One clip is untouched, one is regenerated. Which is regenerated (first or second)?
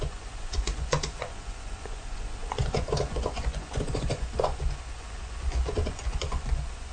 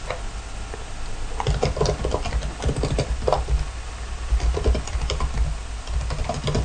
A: first